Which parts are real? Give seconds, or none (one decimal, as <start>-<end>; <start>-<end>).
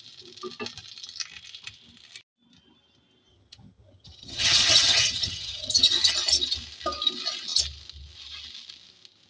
0.0-3.3; 6.1-9.3